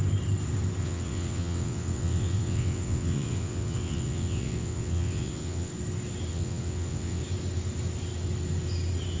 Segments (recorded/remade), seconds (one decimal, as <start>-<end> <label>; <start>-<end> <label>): 0.0-0.8 recorded; 0.8-5.7 remade; 5.7-6.3 recorded; 6.3-7.2 remade; 7.2-9.2 recorded